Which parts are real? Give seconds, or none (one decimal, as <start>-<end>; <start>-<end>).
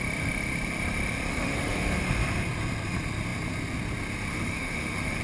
0.0-1.3; 2.0-4.3